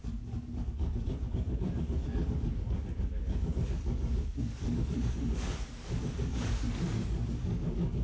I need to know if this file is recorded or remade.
remade